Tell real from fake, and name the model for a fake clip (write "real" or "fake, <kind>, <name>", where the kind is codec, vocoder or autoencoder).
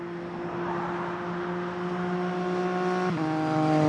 real